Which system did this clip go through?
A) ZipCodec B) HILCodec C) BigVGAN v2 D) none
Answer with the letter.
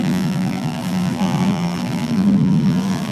C